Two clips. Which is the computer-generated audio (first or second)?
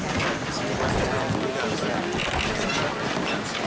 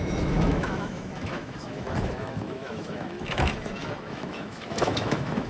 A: second